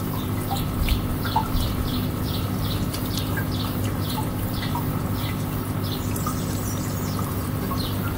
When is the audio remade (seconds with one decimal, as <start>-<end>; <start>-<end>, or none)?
0.0-8.2